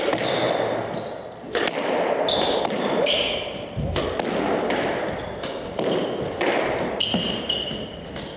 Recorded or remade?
recorded